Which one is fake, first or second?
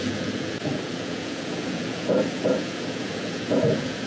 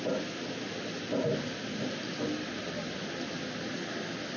first